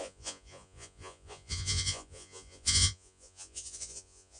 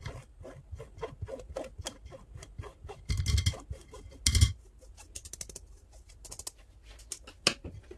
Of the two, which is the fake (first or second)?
first